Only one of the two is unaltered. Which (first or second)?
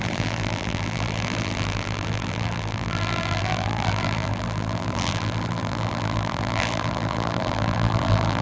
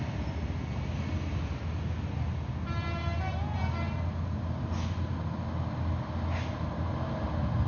second